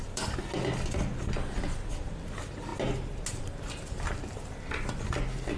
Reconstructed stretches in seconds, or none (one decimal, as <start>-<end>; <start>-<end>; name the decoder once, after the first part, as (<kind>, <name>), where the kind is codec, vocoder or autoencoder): none

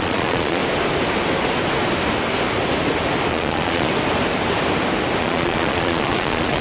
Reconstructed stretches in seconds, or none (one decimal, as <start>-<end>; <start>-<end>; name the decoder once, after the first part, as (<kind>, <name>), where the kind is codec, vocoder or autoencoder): 0.0-0.6 (vocoder, Vocos); 3.3-3.9; 5.2-6.6

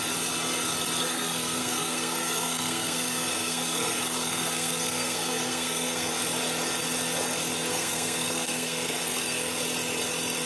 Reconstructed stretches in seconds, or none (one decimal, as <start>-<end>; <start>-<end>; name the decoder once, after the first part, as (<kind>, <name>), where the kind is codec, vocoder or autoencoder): 1.1-6.1 (codec, SNAC); 7.7-9.6